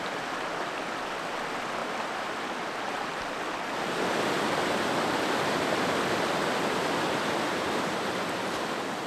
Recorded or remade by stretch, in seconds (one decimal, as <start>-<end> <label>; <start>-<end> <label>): 0.0-1.8 recorded; 1.8-2.5 remade; 2.5-9.1 recorded